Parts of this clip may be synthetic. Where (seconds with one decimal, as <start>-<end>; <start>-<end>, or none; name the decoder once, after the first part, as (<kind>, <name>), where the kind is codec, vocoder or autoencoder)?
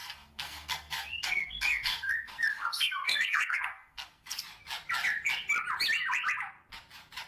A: 0.0-4.4 (codec, SNAC)